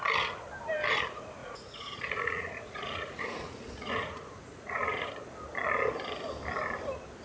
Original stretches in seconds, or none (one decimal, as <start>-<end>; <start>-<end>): 0.0-1.4; 5.1-7.2